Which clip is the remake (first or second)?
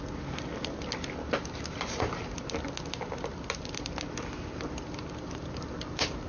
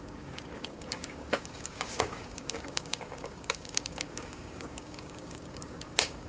second